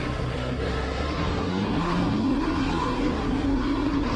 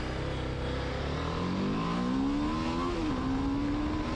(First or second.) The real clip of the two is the second